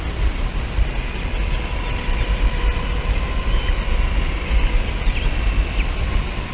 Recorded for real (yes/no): yes